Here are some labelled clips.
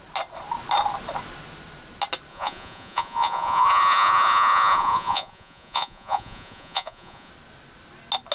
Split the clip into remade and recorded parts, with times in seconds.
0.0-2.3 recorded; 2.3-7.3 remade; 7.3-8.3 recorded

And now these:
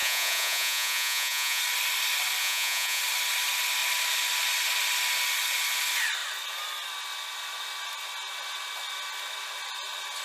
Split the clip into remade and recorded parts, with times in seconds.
0.0-1.6 remade; 1.6-2.4 recorded; 2.4-3.0 remade; 3.0-10.2 recorded

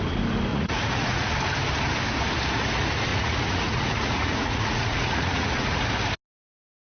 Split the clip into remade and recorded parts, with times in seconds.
0.0-0.5 recorded; 0.5-1.3 remade; 1.3-3.1 recorded; 3.1-5.8 remade; 5.8-7.0 recorded

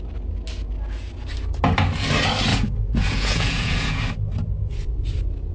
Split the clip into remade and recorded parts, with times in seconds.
0.0-2.5 recorded; 2.5-4.0 remade; 4.0-5.5 recorded